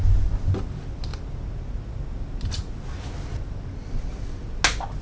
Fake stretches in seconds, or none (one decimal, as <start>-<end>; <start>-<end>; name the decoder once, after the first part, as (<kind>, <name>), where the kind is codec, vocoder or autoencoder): none